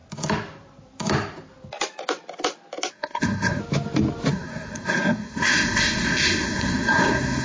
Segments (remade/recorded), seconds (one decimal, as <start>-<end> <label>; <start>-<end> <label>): 0.0-2.9 recorded; 2.9-3.6 remade; 3.6-4.3 recorded; 4.3-7.4 remade